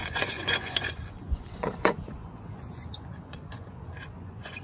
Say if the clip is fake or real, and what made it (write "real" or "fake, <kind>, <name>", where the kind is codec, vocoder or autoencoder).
fake, vocoder, Vocos